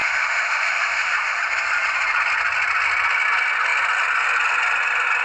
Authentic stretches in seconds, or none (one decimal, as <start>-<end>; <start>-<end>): 1.4-5.2